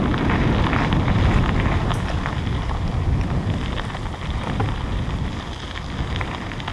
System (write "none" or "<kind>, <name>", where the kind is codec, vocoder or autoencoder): none